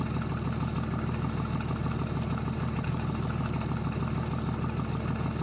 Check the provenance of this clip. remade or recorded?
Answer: recorded